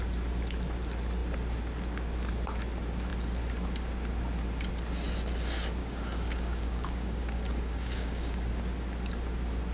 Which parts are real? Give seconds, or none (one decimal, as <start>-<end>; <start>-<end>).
0.0-5.8; 8.5-9.7